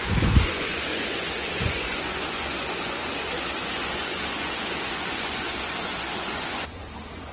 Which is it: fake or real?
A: fake